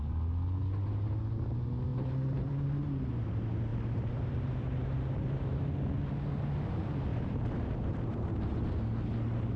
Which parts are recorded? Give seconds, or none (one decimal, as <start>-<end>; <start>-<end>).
0.0-1.9; 2.5-3.7; 5.7-7.1; 8.6-9.6